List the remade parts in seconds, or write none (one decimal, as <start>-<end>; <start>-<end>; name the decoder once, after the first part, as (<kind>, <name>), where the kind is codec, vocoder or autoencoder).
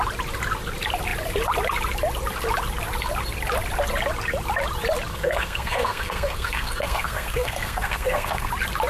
5.1-8.5 (codec, SNAC)